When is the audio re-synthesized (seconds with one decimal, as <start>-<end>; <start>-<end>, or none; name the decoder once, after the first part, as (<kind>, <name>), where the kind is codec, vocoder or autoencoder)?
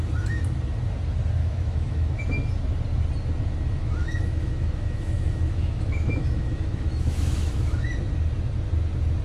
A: 1.4-2.2 (autoencoder, DAC-VAE); 3.8-7.9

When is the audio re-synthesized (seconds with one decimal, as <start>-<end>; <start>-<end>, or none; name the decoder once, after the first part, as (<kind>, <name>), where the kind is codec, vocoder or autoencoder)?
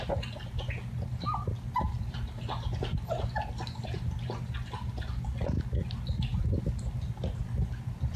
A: none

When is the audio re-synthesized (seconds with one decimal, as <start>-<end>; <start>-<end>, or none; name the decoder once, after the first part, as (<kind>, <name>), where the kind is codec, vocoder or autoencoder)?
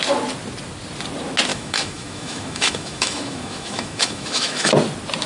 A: 1.5-4.7 (autoencoder, DAC-VAE)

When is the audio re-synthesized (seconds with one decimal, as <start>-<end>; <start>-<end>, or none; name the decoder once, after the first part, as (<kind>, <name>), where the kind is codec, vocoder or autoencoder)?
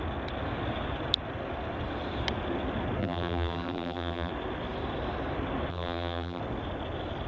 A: 3.0-4.3 (vocoder, BigVGAN v2); 5.7-6.4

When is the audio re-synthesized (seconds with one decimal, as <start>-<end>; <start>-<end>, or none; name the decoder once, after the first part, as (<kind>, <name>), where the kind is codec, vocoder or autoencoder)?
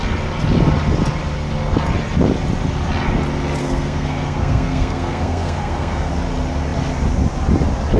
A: 3.6-6.1 (codec, SNAC)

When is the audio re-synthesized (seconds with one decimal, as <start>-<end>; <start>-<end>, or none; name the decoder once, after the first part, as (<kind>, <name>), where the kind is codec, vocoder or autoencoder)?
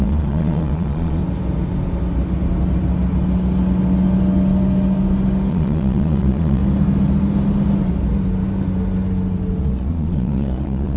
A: 0.0-1.2 (vocoder, Vocos); 5.5-6.6; 9.6-11.0